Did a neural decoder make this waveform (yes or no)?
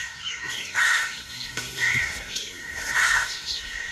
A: yes